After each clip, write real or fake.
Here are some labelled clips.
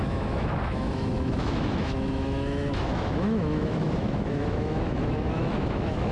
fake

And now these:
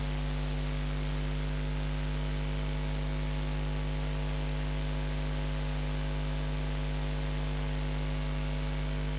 real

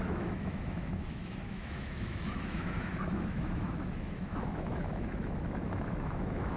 fake